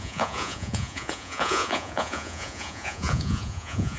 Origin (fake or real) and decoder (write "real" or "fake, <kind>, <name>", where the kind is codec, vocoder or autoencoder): fake, vocoder, Vocos